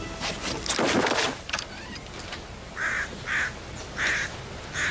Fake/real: real